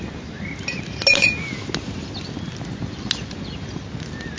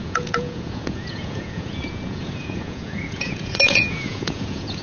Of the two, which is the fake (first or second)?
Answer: second